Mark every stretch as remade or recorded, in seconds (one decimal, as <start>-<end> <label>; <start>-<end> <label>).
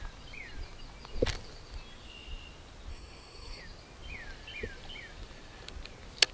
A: 0.0-2.9 recorded; 2.9-3.6 remade; 3.6-6.3 recorded